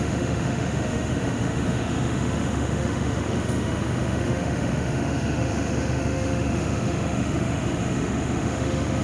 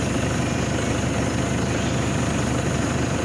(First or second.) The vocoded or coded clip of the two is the first